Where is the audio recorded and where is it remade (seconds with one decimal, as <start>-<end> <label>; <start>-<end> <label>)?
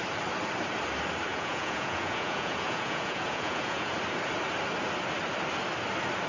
0.0-1.3 recorded; 1.3-3.9 remade; 3.9-6.3 recorded